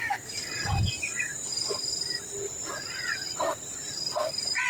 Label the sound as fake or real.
fake